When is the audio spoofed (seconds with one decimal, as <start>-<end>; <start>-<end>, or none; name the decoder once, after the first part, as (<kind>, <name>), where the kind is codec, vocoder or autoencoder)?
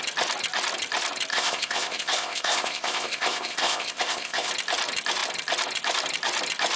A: 1.3-4.5 (codec, ZipCodec)